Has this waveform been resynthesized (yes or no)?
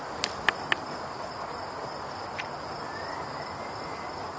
no